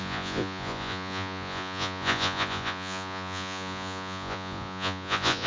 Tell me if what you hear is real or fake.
fake